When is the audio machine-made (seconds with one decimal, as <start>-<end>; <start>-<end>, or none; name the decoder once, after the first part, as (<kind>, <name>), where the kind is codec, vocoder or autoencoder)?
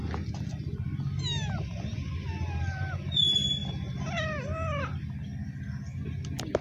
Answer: none